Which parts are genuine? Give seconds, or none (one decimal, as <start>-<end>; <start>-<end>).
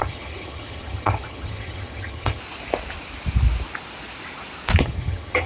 2.4-4.8